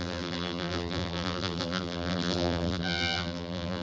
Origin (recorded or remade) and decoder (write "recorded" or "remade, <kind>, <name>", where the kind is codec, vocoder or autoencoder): remade, vocoder, BigVGAN v2